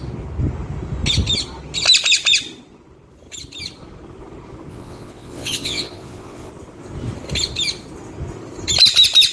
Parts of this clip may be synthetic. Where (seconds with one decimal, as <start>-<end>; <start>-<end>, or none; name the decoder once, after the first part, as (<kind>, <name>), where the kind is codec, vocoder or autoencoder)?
4.7-6.5 (vocoder, WaveNeXt)